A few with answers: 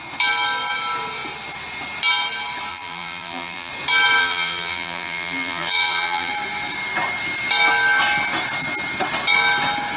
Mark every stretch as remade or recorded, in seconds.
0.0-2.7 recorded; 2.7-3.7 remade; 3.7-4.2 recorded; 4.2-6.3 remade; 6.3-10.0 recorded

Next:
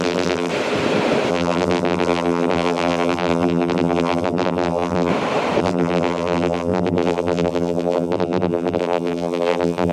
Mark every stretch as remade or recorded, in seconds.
0.0-0.5 remade; 0.5-1.3 recorded; 1.3-5.1 remade; 5.1-5.6 recorded; 5.6-9.9 remade

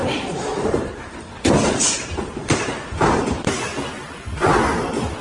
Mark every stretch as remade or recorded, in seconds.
0.0-0.9 remade; 0.9-2.4 recorded; 2.4-3.5 remade; 3.5-5.2 recorded

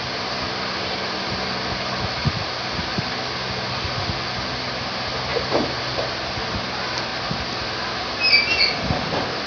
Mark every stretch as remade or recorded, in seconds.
0.0-5.3 recorded; 5.3-6.1 remade; 6.1-7.1 recorded; 7.1-8.0 remade; 8.0-9.5 recorded

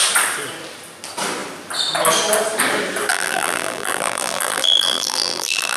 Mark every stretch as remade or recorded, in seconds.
0.0-3.1 recorded; 3.1-5.8 remade

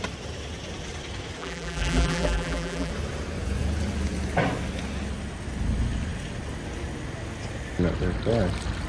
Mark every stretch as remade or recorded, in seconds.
0.0-1.4 recorded; 1.4-2.9 remade; 2.9-8.9 recorded

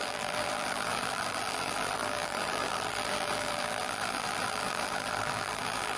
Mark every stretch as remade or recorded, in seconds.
0.0-6.0 remade